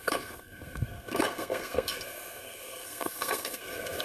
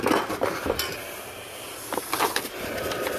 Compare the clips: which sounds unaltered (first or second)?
second